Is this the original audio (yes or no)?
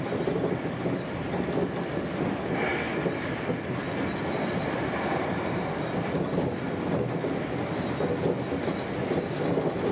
yes